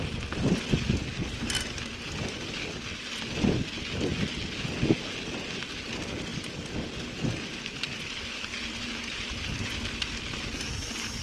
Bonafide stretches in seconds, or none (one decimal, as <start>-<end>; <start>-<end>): 0.0-11.2